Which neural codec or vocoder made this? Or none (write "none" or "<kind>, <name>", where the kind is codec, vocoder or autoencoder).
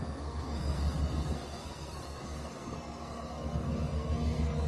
codec, SNAC